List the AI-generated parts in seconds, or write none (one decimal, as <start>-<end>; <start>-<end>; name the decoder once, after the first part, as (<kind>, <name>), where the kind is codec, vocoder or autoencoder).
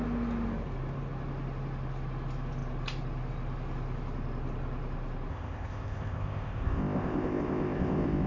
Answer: 5.3-8.3 (codec, ZipCodec)